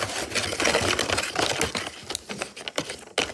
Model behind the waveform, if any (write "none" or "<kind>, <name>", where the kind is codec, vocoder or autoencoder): none